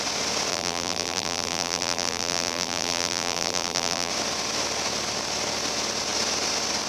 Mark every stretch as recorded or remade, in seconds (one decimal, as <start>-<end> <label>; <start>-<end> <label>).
0.0-0.5 recorded; 0.5-4.1 remade; 4.1-6.9 recorded